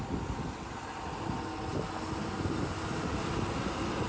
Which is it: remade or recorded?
recorded